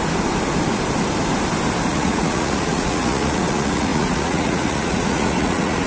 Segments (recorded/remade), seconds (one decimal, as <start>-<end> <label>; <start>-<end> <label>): 0.0-1.9 recorded; 1.9-5.9 remade